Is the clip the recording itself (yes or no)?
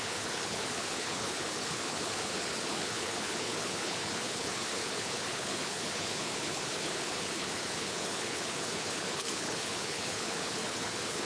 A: no